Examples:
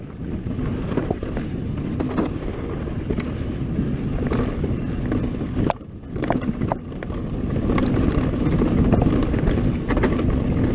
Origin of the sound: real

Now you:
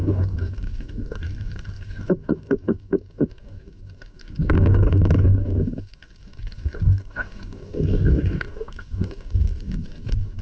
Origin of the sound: fake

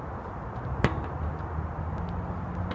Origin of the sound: real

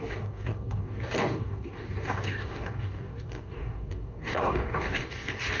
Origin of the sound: fake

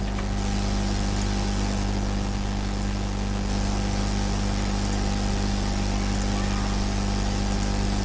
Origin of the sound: real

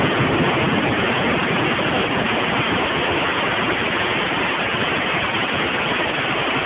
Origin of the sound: real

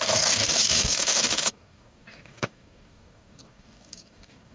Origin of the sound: fake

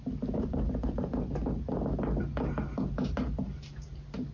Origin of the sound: real